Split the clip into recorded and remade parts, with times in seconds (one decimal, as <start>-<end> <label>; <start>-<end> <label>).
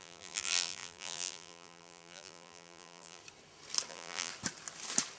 0.0-3.2 remade; 3.2-3.9 recorded; 3.9-4.3 remade; 4.3-5.2 recorded